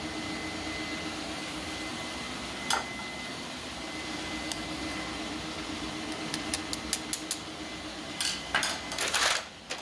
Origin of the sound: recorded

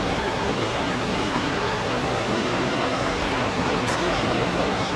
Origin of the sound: remade